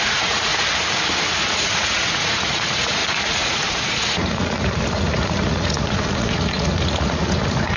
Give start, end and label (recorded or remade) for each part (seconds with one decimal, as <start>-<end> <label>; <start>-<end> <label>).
0.0-0.5 remade; 0.5-1.5 recorded; 1.5-7.8 remade